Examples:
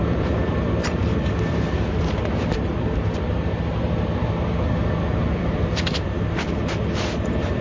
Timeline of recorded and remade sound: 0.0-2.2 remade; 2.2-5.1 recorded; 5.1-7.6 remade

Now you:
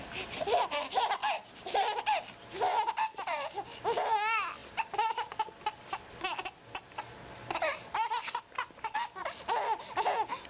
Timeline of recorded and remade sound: 0.0-1.2 recorded; 1.2-2.2 remade; 2.2-4.6 recorded; 4.6-8.4 remade; 8.4-9.2 recorded; 9.2-10.1 remade; 10.1-10.5 recorded

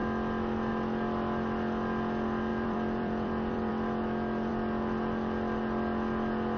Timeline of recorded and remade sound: 0.0-2.5 recorded; 2.5-3.7 remade; 3.7-6.6 recorded

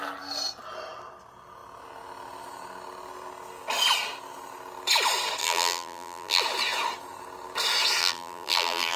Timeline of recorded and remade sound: 0.0-5.4 recorded; 5.4-6.4 remade; 6.4-8.0 recorded; 8.0-9.0 remade